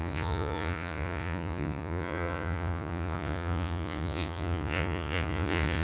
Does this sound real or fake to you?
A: fake